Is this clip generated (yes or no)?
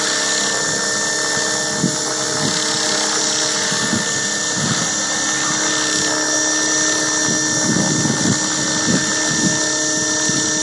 no